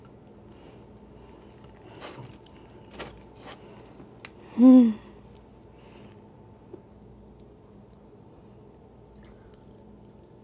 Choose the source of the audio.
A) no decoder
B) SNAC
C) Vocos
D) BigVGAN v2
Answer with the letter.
A